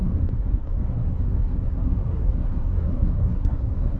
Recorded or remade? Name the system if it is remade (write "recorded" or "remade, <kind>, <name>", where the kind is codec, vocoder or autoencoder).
remade, codec, SNAC